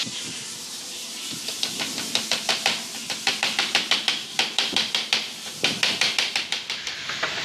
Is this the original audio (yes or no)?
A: no